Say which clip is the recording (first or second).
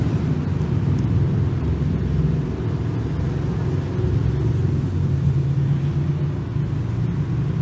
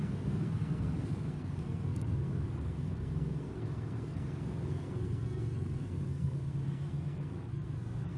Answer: first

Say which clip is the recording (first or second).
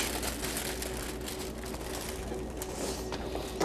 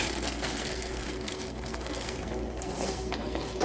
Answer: first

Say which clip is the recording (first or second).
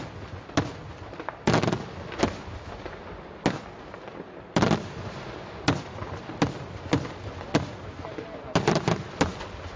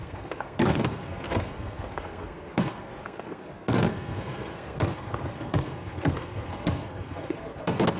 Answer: first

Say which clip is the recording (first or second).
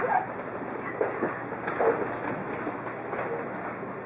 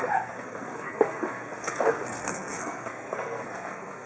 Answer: first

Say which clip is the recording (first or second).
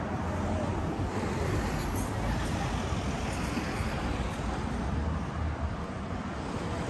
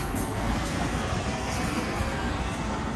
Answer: first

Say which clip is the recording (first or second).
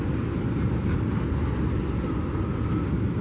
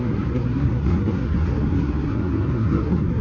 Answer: first